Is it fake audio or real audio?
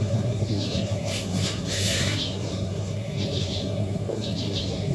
fake